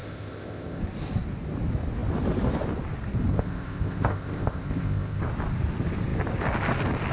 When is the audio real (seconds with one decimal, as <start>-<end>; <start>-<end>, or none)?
0.8-3.3; 5.2-7.1